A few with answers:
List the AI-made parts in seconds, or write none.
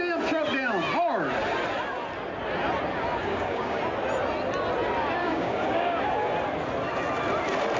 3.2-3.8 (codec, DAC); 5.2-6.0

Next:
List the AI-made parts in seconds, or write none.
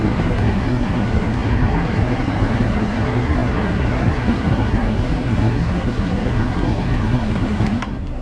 0.0-8.2 (codec, SNAC)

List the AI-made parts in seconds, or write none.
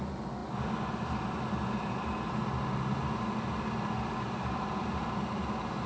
none